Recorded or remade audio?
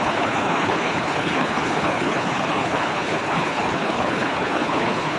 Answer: remade